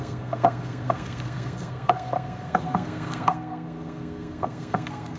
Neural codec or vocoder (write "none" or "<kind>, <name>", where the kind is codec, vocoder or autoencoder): codec, SNAC